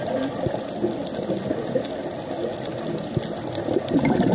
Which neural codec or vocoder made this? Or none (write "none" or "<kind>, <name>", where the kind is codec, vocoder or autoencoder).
none